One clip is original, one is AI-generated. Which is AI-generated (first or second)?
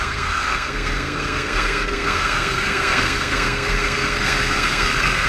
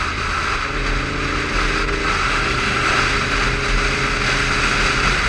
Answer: first